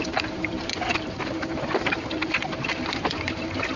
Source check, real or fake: fake